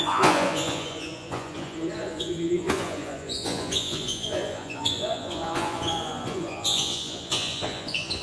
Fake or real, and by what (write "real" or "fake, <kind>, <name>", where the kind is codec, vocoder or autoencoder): fake, vocoder, Vocos